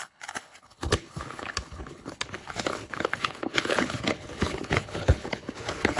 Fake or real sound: fake